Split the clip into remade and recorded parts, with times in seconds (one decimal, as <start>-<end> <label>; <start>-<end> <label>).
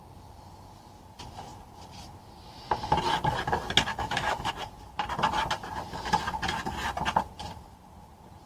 0.0-3.9 recorded; 3.9-4.5 remade; 4.5-8.5 recorded